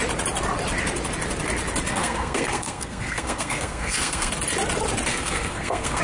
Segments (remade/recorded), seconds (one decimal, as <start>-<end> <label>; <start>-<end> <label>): 0.0-1.9 recorded; 1.9-4.3 remade; 4.3-5.1 recorded; 5.1-6.0 remade